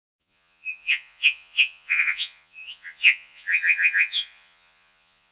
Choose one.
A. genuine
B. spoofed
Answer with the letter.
B